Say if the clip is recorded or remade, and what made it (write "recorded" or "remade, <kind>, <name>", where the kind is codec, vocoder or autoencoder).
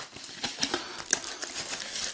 recorded